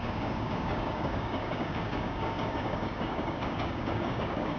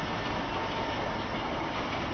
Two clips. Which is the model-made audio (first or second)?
first